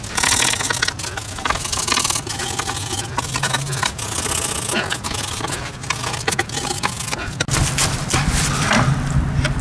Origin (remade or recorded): recorded